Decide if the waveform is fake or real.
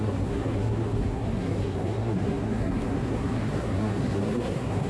fake